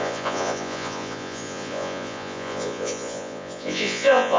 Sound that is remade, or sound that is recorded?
remade